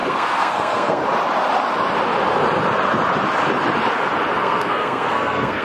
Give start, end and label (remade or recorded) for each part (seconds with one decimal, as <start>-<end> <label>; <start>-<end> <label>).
0.0-1.0 remade; 1.0-4.4 recorded; 4.4-5.6 remade